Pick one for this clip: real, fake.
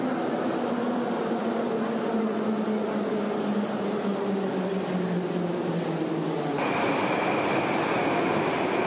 real